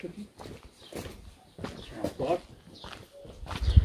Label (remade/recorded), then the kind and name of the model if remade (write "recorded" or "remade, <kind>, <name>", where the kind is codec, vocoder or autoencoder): recorded